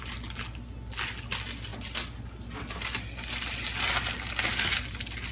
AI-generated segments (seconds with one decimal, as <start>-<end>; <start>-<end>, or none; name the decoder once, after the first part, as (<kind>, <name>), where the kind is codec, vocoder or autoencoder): none